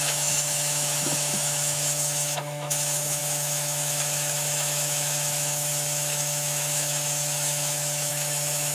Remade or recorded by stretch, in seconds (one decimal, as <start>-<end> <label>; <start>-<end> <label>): 0.0-8.7 remade

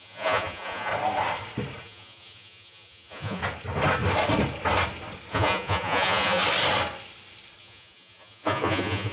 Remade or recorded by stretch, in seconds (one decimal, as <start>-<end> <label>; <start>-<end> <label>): 0.0-0.9 remade; 0.9-1.8 recorded; 1.8-3.4 remade; 3.4-5.3 recorded; 5.3-6.4 remade; 6.4-7.6 recorded; 7.6-9.1 remade

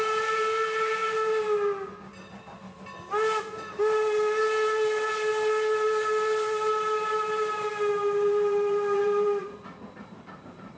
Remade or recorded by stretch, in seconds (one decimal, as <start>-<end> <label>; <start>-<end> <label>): 0.0-1.0 remade; 1.0-5.1 recorded; 5.1-9.4 remade; 9.4-10.0 recorded; 10.0-10.8 remade

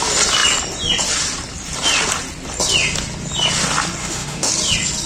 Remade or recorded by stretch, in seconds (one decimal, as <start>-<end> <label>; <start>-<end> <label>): 0.0-4.0 recorded; 4.0-4.5 remade; 4.5-5.1 recorded

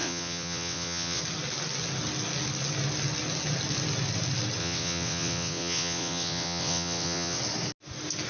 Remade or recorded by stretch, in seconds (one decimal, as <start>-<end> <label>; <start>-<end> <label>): 0.0-1.2 remade; 1.2-4.6 recorded; 4.6-7.4 remade; 7.4-8.3 recorded